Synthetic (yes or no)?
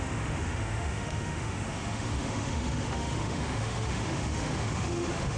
yes